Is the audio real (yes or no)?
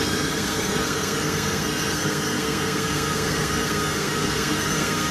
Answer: no